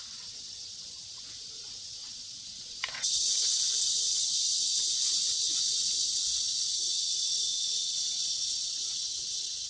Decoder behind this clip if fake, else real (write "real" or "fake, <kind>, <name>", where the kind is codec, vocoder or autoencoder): fake, vocoder, WaveNeXt